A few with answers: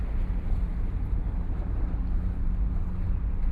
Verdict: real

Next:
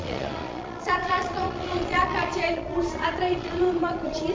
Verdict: fake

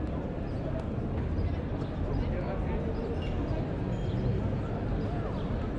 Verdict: real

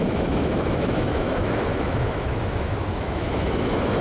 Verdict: fake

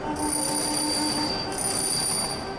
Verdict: real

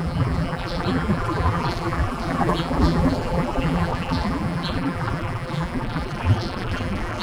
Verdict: fake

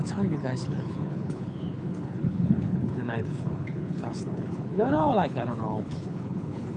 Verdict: fake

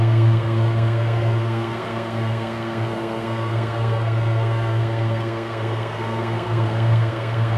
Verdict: fake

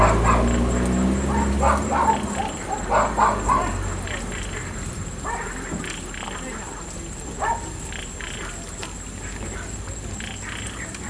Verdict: real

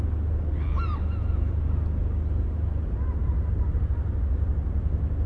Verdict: real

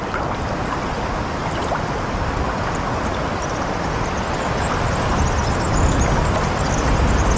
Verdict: real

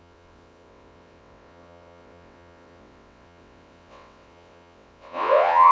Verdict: fake